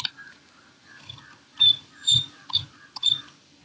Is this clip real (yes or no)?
no